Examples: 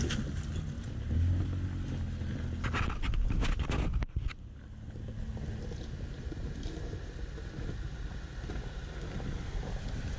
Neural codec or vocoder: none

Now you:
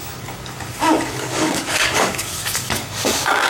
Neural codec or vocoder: codec, DAC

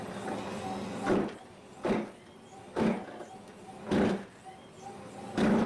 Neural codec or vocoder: none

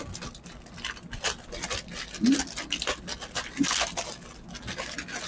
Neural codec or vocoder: none